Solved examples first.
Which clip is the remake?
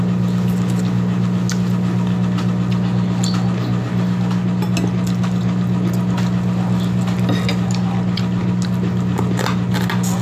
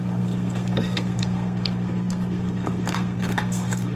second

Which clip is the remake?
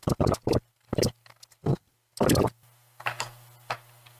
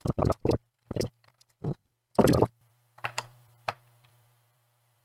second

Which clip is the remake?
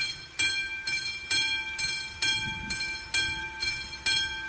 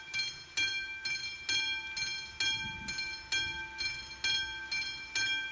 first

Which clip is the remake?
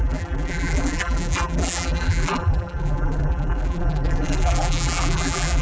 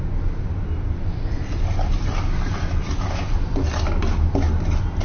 first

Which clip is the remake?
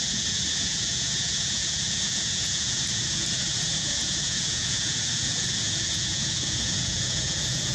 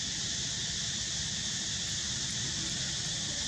first